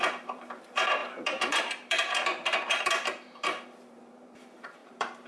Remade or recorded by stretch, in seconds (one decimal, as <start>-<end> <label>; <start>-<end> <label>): 0.0-5.3 remade